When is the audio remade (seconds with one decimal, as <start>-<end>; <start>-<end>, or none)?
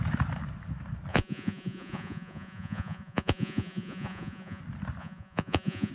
1.1-4.6; 5.0-5.9